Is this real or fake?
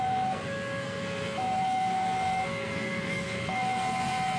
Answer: fake